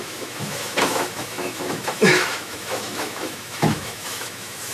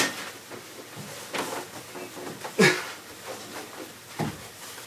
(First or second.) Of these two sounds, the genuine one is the second